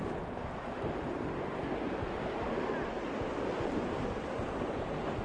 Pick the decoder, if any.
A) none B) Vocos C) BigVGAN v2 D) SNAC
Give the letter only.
A